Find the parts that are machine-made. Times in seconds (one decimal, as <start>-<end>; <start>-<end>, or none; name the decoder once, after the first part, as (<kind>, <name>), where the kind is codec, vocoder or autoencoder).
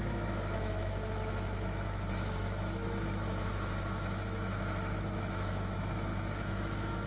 0.0-7.1 (autoencoder, DAC-VAE)